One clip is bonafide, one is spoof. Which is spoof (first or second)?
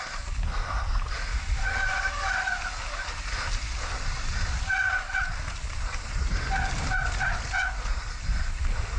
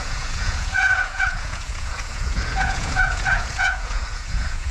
second